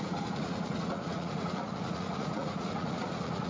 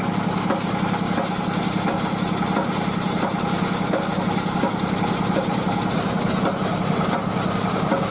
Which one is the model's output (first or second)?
first